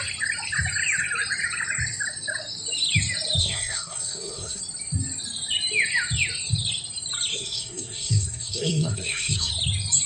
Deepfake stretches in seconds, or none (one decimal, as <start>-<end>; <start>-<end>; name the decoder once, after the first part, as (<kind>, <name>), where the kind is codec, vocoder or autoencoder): 3.4-4.6 (codec, SNAC); 7.3-9.5